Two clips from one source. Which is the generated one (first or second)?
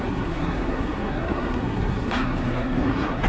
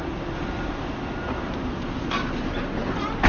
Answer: first